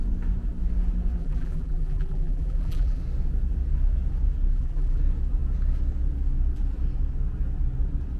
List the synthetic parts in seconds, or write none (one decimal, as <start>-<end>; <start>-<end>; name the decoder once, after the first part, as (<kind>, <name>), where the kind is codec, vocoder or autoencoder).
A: 1.2-3.0 (vocoder, BigVGAN v2); 4.5-5.0